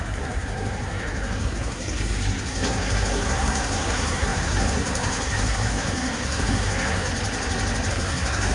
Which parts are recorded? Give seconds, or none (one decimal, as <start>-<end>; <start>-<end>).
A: 7.1-7.9